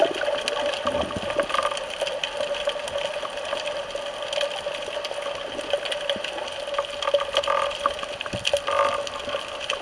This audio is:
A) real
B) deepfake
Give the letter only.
A